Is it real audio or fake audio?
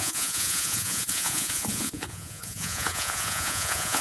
fake